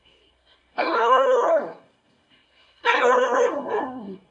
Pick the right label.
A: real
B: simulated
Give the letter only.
B